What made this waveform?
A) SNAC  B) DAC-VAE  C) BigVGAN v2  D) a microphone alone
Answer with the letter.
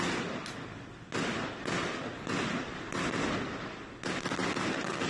D